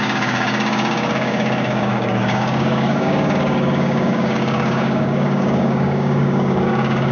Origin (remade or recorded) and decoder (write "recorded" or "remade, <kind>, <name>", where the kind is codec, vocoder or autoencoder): remade, codec, DAC